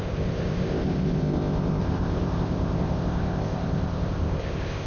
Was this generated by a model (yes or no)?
yes